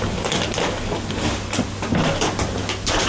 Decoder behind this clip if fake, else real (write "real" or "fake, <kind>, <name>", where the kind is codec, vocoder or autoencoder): real